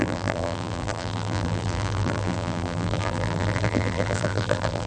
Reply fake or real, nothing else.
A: fake